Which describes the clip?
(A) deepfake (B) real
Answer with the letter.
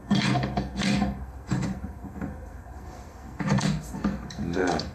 A